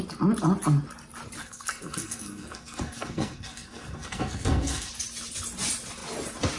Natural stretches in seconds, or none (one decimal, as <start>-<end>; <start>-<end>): 0.0-1.4; 4.9-6.6